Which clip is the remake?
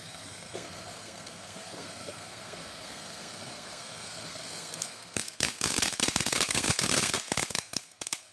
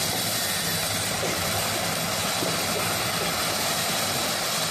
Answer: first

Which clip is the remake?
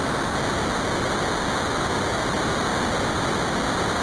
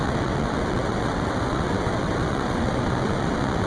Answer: second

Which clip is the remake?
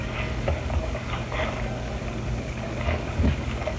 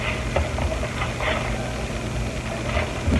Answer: first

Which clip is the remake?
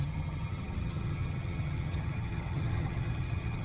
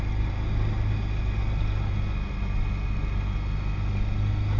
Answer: first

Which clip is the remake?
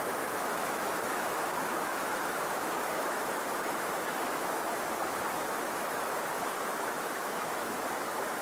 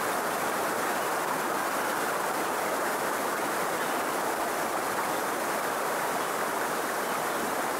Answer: first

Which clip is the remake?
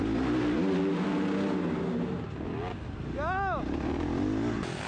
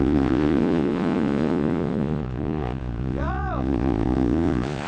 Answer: second